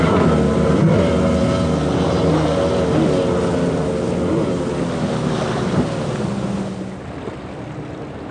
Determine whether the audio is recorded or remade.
recorded